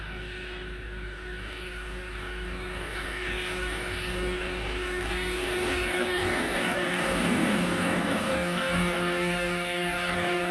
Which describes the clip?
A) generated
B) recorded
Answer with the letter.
A